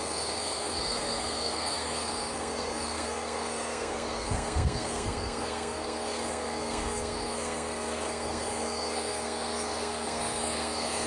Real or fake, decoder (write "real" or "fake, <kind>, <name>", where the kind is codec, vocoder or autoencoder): fake, codec, SNAC